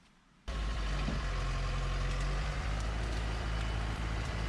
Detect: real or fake fake